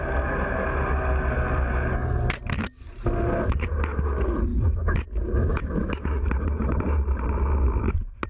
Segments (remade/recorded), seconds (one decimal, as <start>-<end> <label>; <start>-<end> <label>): 0.0-4.5 recorded; 4.5-6.3 remade; 6.3-8.3 recorded